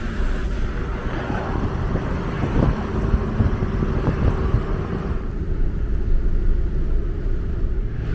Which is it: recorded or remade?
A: recorded